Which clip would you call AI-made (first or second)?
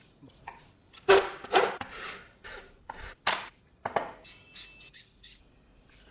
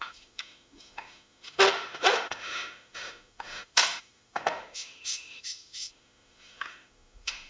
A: second